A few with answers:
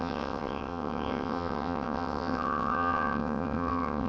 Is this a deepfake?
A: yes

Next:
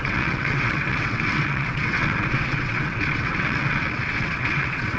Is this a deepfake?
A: yes